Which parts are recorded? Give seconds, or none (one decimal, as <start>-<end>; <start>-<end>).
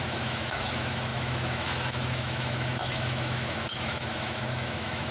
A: none